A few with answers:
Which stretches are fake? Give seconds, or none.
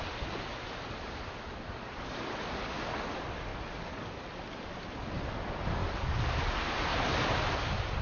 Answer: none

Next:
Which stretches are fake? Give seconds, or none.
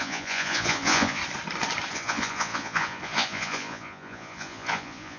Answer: 0.0-1.2; 1.9-5.2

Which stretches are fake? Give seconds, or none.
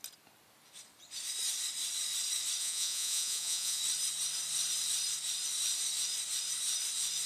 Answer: 2.6-3.8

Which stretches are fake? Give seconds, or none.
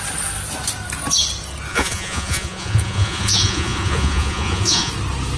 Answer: 1.7-4.9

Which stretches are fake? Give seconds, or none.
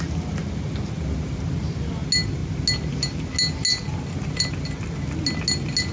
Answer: none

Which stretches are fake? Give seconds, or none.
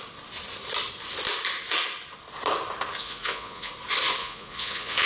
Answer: 3.0-3.7; 4.2-5.1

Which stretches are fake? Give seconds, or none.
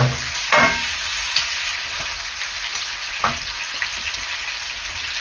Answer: none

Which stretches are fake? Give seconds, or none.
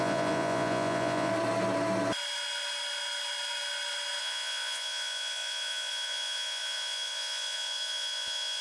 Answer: 0.0-1.3; 4.2-8.6